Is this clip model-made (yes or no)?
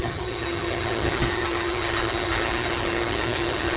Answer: yes